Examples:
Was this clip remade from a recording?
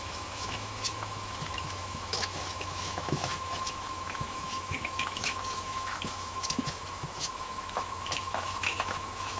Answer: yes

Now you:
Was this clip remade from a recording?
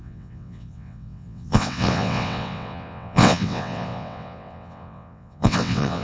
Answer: yes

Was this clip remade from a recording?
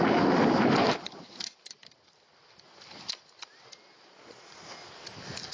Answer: no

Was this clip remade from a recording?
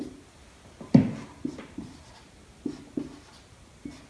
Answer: no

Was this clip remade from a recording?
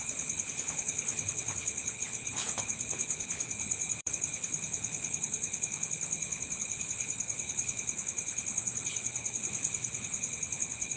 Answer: yes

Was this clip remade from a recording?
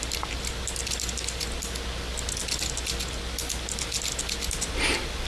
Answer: no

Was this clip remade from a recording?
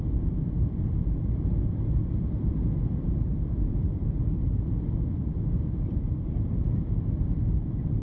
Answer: yes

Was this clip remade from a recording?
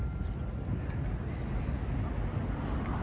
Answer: no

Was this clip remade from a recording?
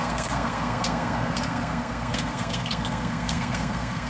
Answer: yes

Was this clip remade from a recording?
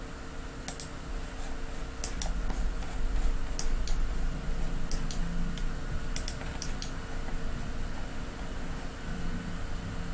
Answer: no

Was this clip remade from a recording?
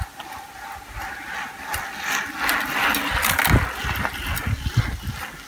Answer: no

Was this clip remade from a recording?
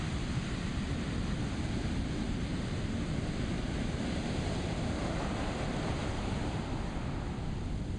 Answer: no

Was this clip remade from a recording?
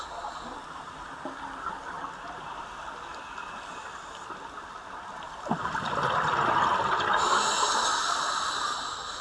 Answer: no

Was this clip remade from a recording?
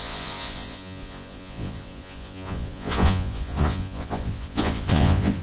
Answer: yes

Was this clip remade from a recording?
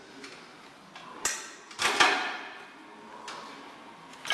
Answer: no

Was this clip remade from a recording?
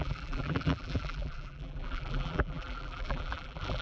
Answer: yes